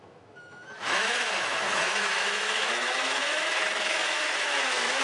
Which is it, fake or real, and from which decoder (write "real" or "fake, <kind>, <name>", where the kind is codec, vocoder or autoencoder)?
fake, autoencoder, DAC-VAE